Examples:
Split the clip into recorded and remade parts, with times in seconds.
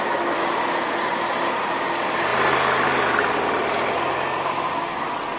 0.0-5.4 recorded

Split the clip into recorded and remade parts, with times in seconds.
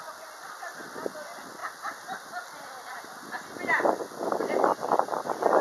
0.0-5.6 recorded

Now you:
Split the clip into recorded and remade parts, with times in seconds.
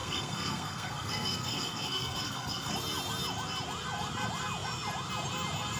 0.0-2.7 remade; 2.7-5.8 recorded